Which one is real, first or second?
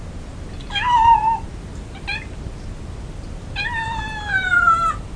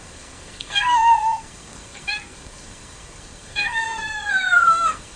first